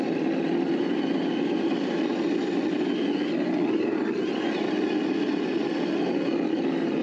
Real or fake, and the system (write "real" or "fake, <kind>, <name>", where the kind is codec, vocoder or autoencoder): real